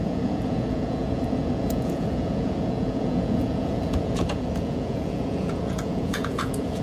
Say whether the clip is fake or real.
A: fake